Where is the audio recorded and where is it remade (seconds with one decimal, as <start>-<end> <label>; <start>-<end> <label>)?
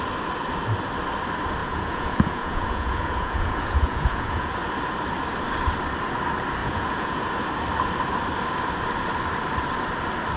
0.0-1.6 recorded; 1.6-4.5 remade; 4.5-6.6 recorded; 6.6-7.3 remade; 7.3-10.4 recorded